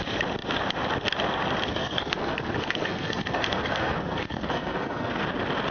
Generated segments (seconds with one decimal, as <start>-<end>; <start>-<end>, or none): 1.8-5.2